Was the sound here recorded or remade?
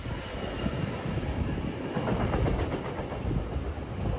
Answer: recorded